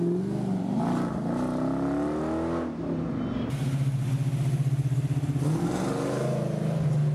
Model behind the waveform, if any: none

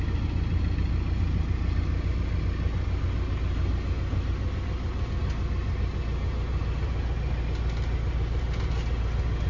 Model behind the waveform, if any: none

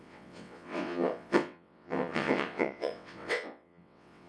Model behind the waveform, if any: vocoder, WaveNeXt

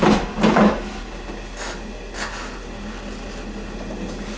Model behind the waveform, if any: none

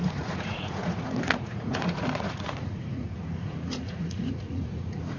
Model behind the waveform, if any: vocoder, Vocos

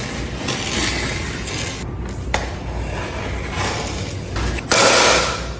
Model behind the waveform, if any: none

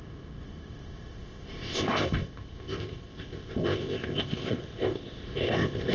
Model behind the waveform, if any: codec, ZipCodec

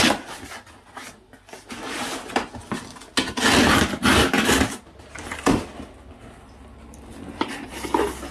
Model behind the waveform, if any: none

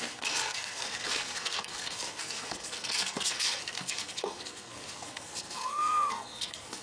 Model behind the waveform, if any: codec, SNAC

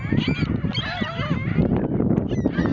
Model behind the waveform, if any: none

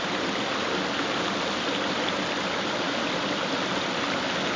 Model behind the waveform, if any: none